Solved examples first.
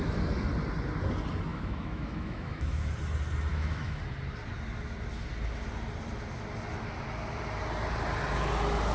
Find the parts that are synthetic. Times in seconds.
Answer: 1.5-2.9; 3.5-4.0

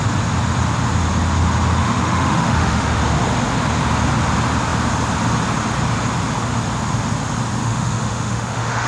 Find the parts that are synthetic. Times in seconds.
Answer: 1.8-3.0; 7.6-8.9

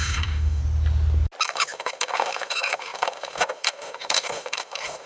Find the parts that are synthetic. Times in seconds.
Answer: 0.0-0.6; 1.4-5.1

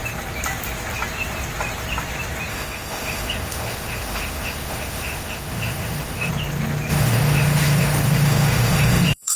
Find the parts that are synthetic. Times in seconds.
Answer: 2.5-6.3; 6.9-9.4

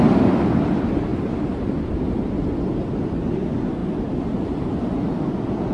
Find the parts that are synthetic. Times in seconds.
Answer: none

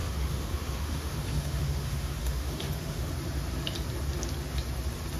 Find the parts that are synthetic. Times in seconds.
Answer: 0.0-3.1

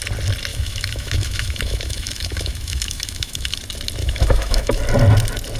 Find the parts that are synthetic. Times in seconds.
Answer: 0.5-3.6; 4.0-4.8

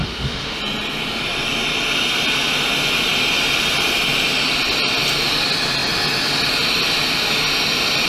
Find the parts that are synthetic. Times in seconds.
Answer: 0.0-0.6